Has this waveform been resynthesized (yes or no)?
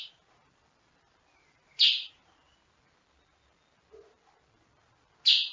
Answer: no